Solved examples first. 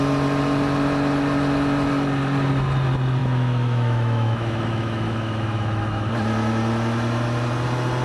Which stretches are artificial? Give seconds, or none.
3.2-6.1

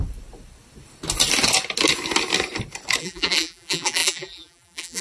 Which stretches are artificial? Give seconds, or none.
3.0-5.0

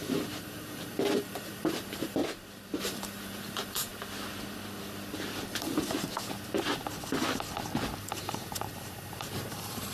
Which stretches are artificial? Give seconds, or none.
0.0-2.2; 2.8-3.9; 8.0-9.9

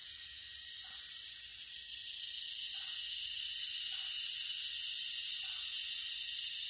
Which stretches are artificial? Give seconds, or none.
none